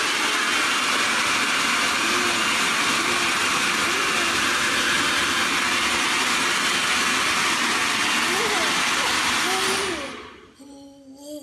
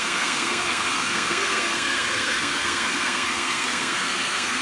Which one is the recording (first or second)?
first